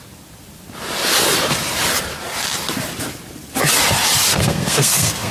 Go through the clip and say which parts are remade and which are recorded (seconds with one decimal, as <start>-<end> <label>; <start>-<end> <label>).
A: 0.0-4.3 recorded; 4.3-5.3 remade

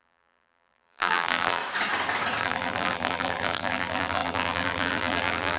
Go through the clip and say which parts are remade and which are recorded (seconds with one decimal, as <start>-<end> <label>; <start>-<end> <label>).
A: 0.0-1.6 remade; 1.6-2.4 recorded; 2.4-5.6 remade

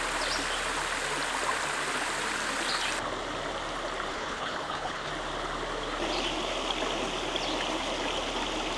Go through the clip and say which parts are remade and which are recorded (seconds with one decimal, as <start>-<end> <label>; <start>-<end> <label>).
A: 0.0-4.1 recorded; 4.1-5.1 remade; 5.1-8.8 recorded